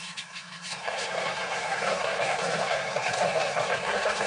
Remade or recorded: remade